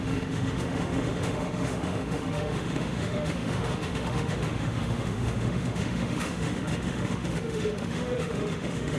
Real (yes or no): no